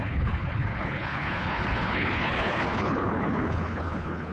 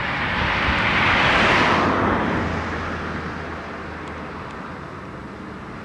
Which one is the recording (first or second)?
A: second